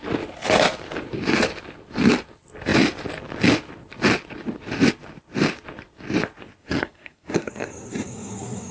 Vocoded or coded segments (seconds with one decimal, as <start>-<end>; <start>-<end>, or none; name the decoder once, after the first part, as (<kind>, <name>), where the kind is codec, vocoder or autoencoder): 6.6-8.7 (codec, SNAC)